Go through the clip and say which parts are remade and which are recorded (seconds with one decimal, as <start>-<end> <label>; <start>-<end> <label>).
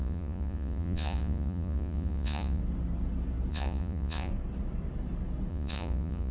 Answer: 0.0-2.6 remade; 2.6-3.5 recorded; 3.5-4.3 remade; 4.3-5.5 recorded; 5.5-6.3 remade